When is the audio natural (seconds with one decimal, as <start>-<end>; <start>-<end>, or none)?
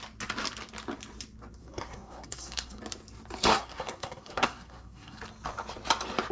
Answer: 0.0-1.6; 2.8-3.5; 5.2-6.3